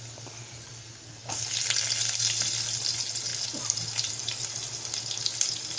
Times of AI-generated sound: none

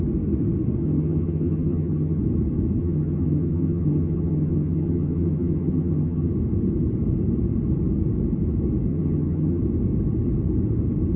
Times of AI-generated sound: 0.8-2.2 (vocoder, HiFi-GAN); 2.8-6.3; 8.9-9.6

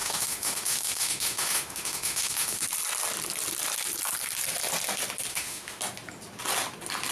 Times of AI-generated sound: 0.0-2.6 (autoencoder, DAC-VAE); 5.3-5.8